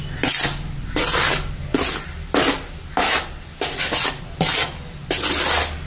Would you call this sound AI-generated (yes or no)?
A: no